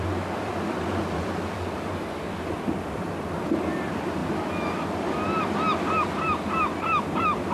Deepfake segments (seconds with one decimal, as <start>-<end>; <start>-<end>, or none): 0.0-1.0; 1.5-4.2; 4.7-7.5